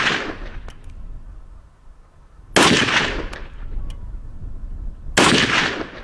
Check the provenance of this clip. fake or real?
real